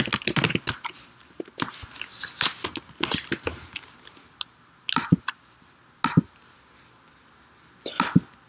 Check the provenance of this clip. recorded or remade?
recorded